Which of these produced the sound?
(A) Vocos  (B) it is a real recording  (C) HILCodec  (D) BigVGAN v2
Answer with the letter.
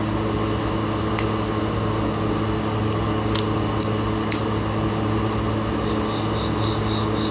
B